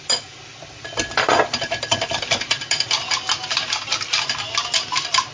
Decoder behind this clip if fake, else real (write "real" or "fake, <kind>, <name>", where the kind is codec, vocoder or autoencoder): real